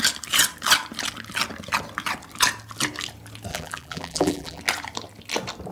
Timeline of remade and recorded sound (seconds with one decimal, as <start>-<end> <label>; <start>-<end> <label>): 0.0-3.5 recorded; 3.5-4.6 remade; 4.6-5.7 recorded